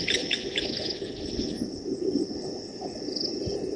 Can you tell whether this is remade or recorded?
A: recorded